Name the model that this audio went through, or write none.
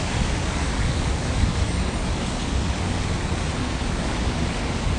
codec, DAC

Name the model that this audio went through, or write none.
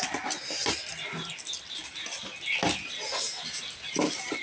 none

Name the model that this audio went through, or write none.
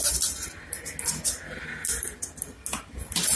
none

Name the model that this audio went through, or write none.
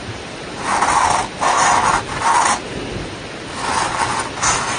none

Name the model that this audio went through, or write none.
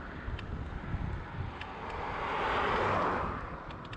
none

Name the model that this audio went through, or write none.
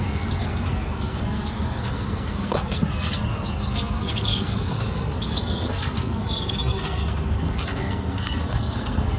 codec, SNAC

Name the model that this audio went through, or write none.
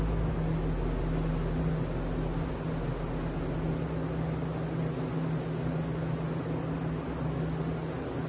none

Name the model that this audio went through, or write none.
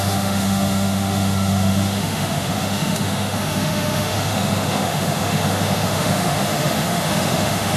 autoencoder, DAC-VAE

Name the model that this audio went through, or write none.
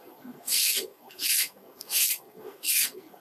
codec, SNAC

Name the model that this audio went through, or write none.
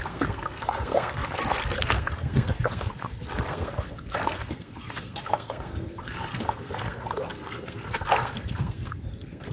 codec, SNAC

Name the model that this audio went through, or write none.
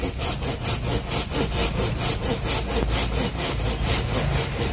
none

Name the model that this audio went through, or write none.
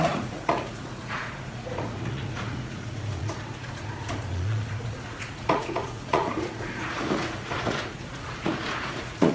vocoder, Vocos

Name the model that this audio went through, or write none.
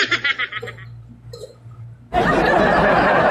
none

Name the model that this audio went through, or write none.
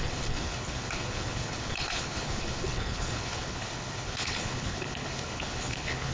codec, HILCodec